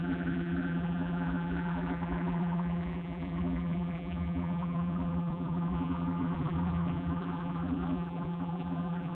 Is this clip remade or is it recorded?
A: remade